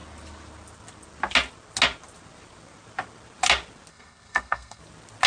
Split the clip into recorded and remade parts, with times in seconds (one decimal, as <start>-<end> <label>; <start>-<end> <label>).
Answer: 0.0-3.9 recorded; 3.9-4.8 remade; 4.8-5.3 recorded